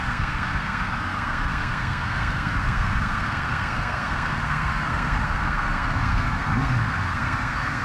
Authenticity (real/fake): fake